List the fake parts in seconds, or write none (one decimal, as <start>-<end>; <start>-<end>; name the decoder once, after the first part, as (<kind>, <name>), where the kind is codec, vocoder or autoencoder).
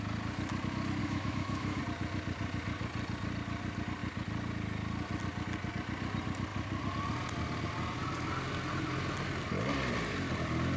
1.0-1.8 (autoencoder, DAC-VAE)